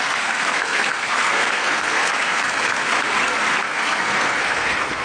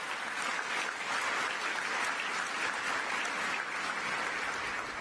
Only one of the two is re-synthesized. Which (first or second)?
first